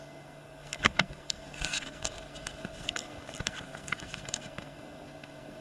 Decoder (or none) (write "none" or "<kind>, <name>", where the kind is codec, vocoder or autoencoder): codec, SNAC